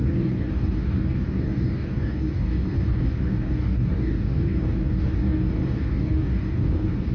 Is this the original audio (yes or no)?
no